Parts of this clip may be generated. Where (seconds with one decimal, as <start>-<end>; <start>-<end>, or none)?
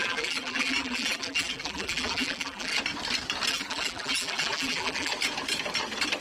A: 0.0-2.7; 3.5-5.1